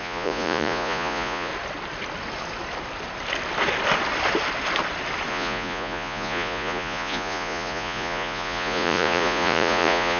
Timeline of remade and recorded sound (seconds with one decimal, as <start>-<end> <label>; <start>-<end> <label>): 0.0-1.5 remade; 1.5-5.3 recorded; 5.3-10.2 remade

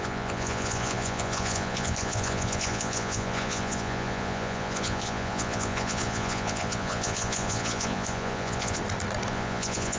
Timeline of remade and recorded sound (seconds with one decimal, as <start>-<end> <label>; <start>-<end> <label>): 0.0-8.8 remade; 8.8-9.3 recorded; 9.3-10.0 remade

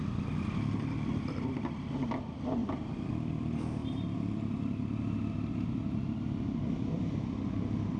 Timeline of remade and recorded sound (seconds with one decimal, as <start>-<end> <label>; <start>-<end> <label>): 0.0-2.6 recorded; 2.6-3.1 remade; 3.1-8.0 recorded

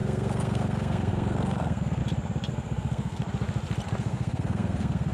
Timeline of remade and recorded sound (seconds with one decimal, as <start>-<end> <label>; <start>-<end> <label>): 0.0-2.0 remade; 2.0-2.5 recorded; 2.5-3.2 remade; 3.2-4.0 recorded; 4.0-5.1 remade

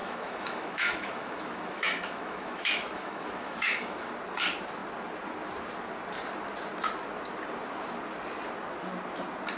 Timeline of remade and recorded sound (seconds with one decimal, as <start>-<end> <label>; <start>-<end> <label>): 0.0-4.1 remade; 4.1-9.6 recorded

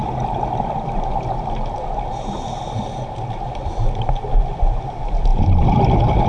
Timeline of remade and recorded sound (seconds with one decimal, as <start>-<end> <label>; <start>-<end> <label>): 0.0-6.3 recorded

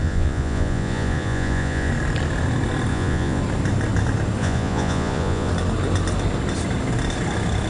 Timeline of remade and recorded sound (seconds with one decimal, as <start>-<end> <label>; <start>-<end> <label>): 0.0-1.9 remade; 1.9-2.9 recorded; 2.9-3.4 remade; 3.4-4.4 recorded; 4.4-5.5 remade; 5.5-7.7 recorded